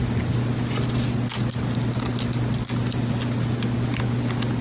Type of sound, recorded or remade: recorded